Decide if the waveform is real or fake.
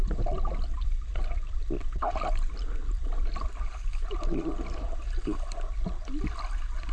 real